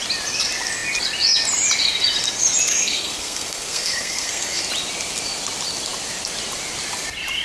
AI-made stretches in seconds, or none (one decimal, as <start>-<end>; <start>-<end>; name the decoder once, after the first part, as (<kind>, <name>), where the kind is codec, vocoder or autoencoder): 2.7-4.6 (codec, SNAC)